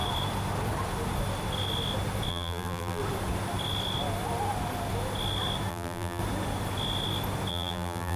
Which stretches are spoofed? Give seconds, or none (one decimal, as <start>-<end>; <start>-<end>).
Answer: 2.3-3.0; 5.7-6.2; 7.5-8.2